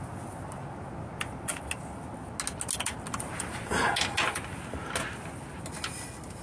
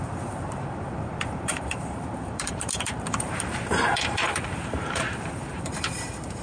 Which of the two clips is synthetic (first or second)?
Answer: second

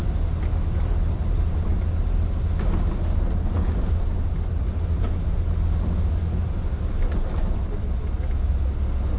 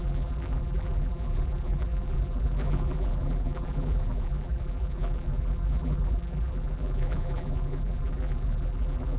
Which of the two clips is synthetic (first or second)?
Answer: second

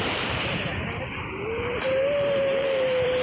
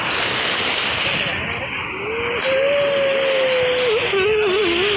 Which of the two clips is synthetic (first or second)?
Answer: first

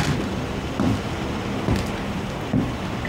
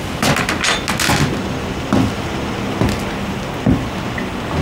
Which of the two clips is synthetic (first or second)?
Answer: first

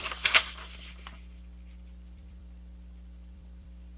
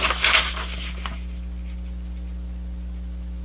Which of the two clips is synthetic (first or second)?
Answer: first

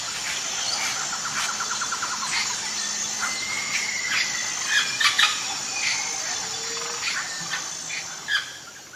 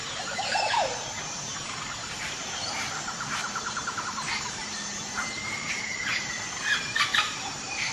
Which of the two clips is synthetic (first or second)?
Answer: second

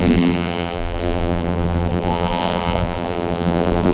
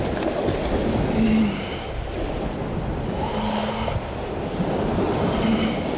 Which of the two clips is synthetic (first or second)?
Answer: first